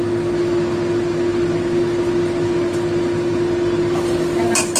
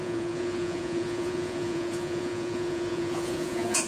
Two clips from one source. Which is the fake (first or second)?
second